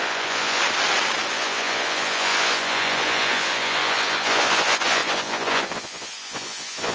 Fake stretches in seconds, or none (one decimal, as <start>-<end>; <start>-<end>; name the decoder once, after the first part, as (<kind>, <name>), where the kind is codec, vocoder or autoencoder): 0.0-0.6 (vocoder, Vocos); 1.3-6.9